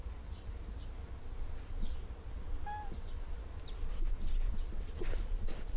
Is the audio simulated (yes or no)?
no